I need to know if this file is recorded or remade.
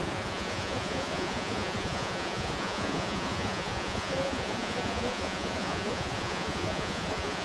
remade